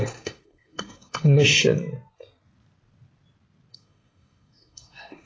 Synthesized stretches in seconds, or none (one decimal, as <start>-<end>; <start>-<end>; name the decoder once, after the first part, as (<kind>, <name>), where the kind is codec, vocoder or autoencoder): 0.0-1.5 (codec, SNAC); 3.7-5.3